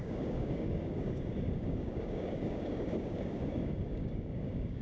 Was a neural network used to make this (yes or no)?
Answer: yes